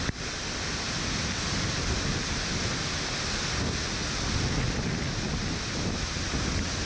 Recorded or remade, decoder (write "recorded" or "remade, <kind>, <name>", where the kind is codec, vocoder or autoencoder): recorded